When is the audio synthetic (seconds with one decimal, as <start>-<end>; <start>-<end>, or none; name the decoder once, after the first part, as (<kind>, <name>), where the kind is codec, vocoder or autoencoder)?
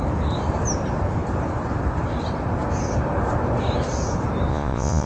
4.5-5.1 (vocoder, Vocos)